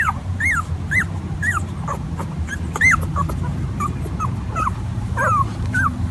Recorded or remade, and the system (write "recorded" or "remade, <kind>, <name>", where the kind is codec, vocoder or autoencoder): remade, vocoder, BigVGAN v2